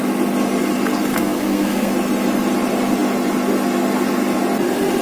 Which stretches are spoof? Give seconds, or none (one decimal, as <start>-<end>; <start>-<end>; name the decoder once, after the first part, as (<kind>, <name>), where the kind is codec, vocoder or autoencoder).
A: 1.1-1.9 (codec, SNAC)